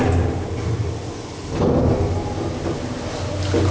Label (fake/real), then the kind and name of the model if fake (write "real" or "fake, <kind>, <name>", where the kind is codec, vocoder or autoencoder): real